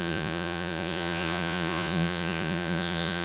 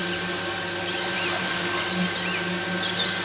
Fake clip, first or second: first